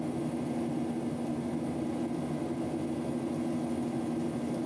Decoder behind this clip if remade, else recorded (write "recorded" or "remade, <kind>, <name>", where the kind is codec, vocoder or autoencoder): recorded